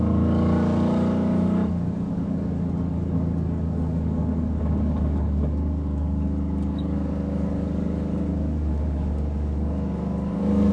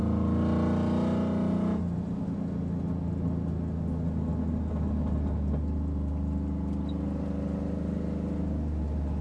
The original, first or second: second